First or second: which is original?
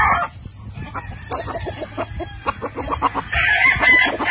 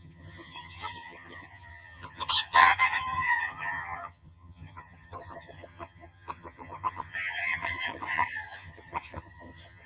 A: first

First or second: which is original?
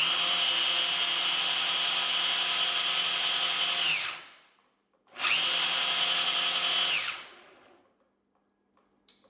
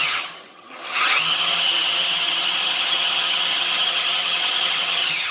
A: first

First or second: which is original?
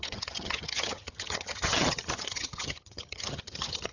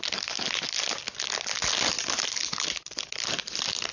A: second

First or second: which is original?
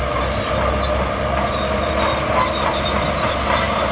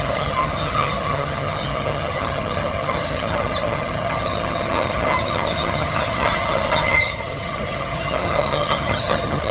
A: first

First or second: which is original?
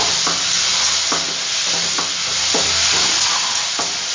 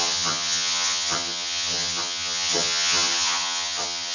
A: first